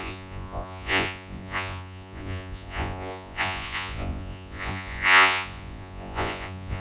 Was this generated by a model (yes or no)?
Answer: yes